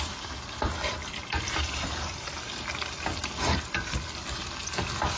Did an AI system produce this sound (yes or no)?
no